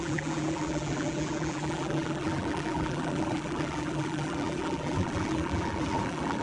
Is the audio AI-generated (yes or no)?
yes